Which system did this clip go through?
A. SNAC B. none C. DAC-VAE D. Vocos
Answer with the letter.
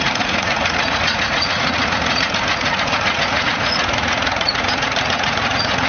D